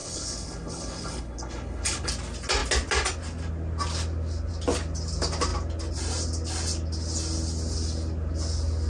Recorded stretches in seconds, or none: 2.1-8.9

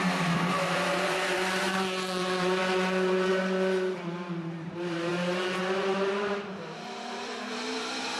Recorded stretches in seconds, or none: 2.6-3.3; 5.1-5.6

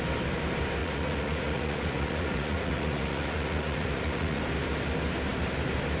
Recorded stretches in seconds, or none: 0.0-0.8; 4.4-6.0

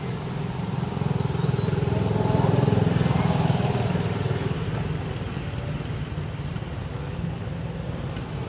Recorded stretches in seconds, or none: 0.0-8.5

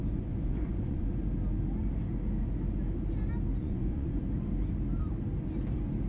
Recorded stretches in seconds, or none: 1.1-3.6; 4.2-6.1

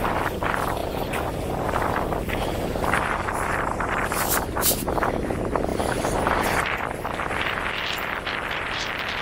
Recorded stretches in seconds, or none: 0.0-5.7; 7.4-9.2